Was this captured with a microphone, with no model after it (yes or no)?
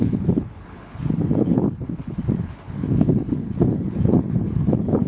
no